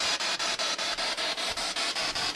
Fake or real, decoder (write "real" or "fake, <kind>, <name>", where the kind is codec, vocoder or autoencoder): fake, vocoder, BigVGAN v2